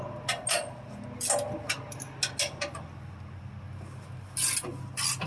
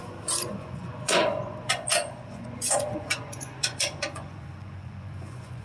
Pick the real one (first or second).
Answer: first